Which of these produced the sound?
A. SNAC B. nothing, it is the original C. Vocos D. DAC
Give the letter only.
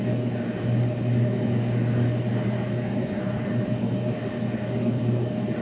D